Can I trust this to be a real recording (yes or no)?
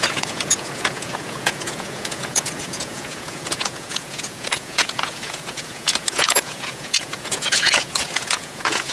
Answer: no